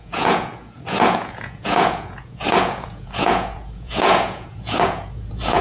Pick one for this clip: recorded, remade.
remade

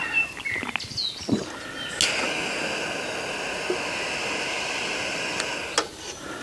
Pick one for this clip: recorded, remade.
recorded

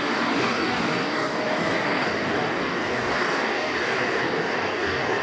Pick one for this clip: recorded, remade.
remade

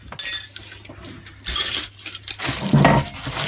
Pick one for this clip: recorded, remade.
recorded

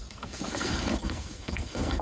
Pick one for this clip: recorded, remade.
remade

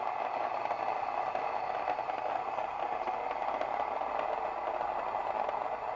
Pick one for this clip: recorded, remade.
recorded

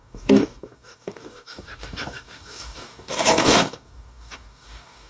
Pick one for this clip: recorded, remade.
remade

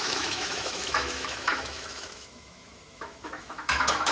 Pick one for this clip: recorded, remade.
remade